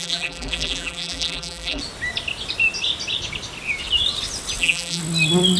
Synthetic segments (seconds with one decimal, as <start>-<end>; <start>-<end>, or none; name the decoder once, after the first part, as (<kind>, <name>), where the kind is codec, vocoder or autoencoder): 0.0-1.8 (vocoder, BigVGAN v2); 4.6-5.0